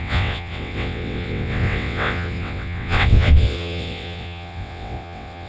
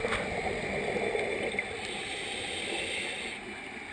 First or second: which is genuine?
second